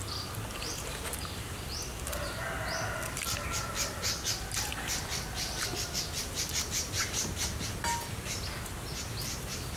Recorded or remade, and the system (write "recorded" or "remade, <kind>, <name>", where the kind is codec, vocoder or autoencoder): recorded